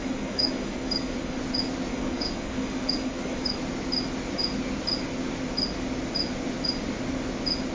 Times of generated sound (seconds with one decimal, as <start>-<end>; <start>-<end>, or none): 0.0-1.4; 1.9-3.5

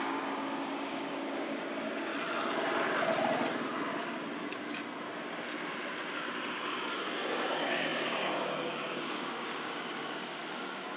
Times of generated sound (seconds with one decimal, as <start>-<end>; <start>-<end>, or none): 0.0-2.1; 7.3-11.0

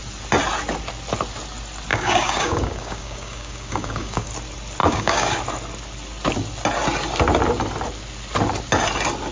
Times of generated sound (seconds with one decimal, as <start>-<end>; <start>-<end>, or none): 1.9-4.3; 4.8-5.4